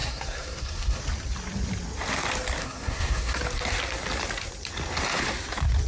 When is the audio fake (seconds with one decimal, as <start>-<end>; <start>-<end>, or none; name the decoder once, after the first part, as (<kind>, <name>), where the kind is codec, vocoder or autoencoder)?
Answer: 0.0-1.0 (codec, SNAC); 2.6-3.4